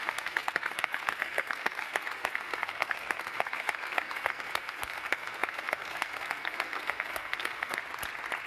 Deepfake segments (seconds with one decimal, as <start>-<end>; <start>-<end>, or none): 0.0-7.8